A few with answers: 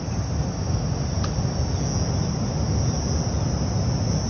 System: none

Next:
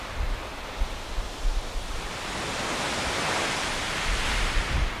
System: none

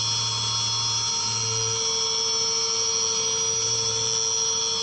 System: none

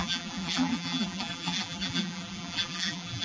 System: vocoder, BigVGAN v2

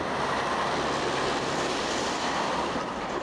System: none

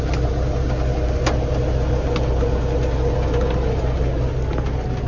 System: none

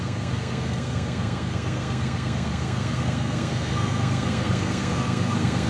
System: codec, SNAC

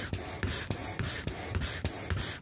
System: vocoder, BigVGAN v2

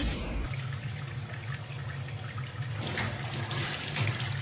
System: none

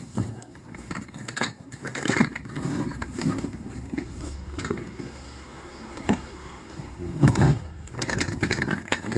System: codec, SNAC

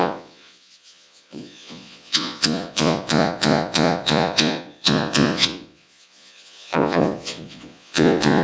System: vocoder, Vocos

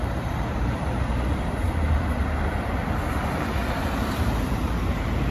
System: vocoder, BigVGAN v2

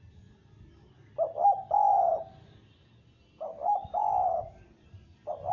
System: none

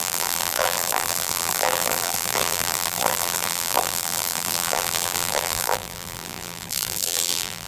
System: vocoder, BigVGAN v2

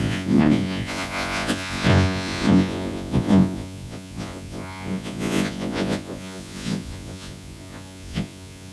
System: vocoder, Vocos